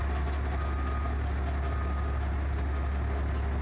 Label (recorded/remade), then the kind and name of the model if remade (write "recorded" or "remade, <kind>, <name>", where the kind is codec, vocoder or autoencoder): recorded